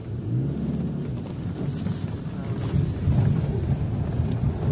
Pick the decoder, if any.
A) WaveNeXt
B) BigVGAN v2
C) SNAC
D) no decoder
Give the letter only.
D